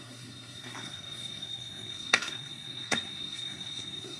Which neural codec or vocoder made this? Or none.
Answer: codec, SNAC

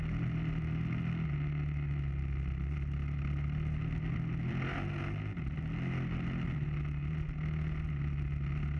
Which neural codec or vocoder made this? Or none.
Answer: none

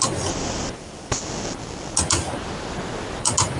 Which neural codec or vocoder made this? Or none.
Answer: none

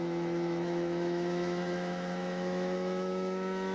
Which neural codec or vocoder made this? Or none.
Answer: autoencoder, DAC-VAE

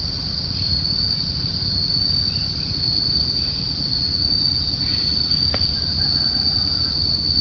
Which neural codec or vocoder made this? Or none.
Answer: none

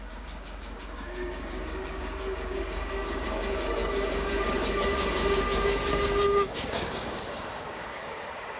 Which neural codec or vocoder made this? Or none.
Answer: codec, DAC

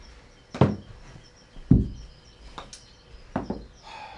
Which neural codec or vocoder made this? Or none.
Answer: none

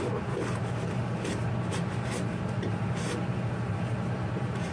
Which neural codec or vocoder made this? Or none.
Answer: none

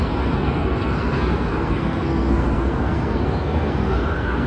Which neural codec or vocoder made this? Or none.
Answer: codec, SNAC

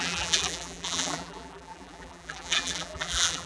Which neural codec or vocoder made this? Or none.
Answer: vocoder, BigVGAN v2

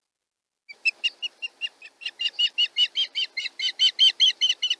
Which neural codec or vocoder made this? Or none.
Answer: none